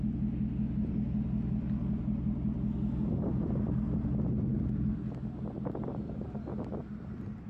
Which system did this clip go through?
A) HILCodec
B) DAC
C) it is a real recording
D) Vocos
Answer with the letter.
C